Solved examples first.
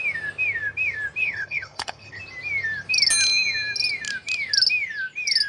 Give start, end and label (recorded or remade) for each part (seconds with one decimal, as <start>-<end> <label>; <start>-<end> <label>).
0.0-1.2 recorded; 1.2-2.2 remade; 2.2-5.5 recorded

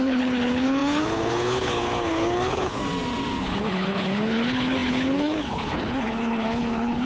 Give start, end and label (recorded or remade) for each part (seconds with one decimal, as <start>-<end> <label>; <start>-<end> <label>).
0.0-2.8 remade; 2.8-3.4 recorded; 3.4-7.1 remade

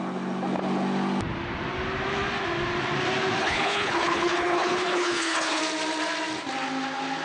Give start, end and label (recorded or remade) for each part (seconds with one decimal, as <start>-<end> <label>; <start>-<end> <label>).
0.0-3.4 recorded; 3.4-5.6 remade; 5.6-7.2 recorded